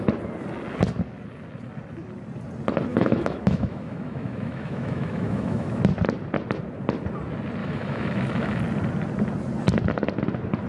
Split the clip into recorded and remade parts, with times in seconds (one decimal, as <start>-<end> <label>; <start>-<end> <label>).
0.0-2.9 recorded; 2.9-5.8 remade; 5.8-7.6 recorded; 7.6-8.6 remade; 8.6-10.7 recorded